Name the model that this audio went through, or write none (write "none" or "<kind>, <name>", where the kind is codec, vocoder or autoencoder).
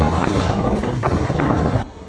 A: codec, SNAC